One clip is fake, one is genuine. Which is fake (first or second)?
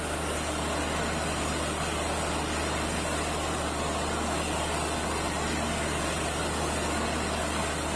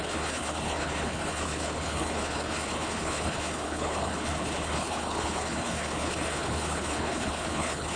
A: second